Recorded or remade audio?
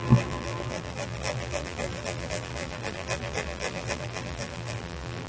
remade